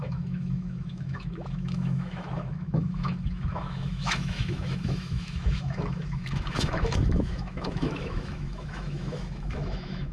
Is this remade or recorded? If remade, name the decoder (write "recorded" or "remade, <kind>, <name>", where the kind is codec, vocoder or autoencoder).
remade, autoencoder, DAC-VAE